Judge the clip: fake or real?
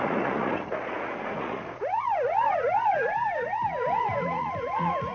fake